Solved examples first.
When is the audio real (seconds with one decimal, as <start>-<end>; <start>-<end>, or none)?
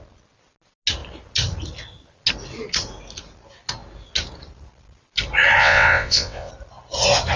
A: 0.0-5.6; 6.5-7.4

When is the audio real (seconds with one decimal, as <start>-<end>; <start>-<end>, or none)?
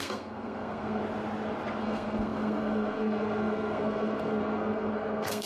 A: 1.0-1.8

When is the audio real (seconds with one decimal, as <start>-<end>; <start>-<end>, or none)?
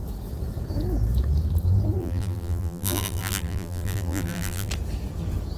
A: 0.0-2.0; 4.7-5.6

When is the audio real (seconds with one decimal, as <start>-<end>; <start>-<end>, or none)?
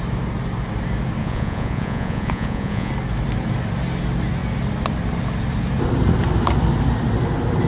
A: 0.0-1.2; 2.9-7.7